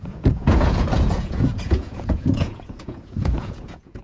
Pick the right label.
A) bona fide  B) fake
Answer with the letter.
B